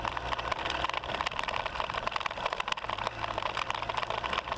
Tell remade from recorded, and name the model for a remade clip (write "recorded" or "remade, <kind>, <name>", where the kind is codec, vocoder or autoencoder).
recorded